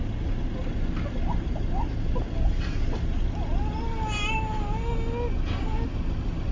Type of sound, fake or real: real